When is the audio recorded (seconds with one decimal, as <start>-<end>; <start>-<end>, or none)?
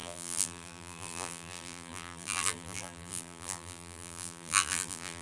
none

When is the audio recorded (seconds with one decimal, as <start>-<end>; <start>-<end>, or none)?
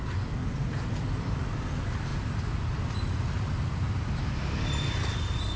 0.0-0.4; 1.6-5.6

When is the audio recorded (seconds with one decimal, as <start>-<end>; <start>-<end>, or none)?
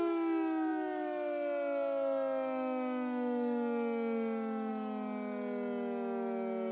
0.0-6.7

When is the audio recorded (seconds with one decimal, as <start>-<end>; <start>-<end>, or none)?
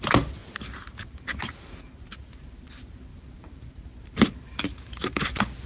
0.0-0.4; 1.5-3.1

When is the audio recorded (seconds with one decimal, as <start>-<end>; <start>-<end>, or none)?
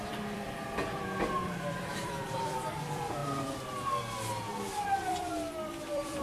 3.2-4.8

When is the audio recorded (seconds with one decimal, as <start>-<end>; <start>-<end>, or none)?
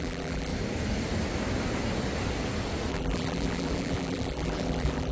0.5-2.9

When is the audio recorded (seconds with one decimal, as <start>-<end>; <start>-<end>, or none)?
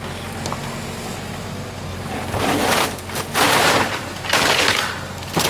0.0-1.9; 2.8-4.7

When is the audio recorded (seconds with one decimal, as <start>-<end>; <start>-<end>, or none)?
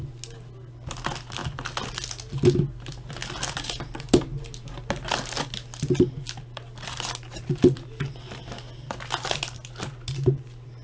0.0-10.8